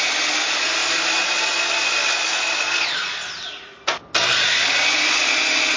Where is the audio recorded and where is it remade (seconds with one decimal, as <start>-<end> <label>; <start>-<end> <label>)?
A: 0.0-5.8 recorded